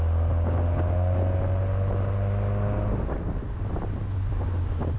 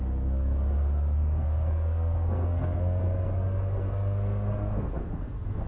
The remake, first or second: second